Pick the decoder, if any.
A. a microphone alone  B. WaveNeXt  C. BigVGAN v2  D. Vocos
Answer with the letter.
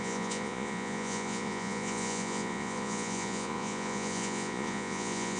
D